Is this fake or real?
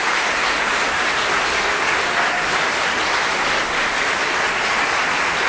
real